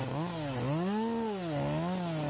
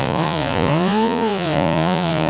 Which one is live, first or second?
first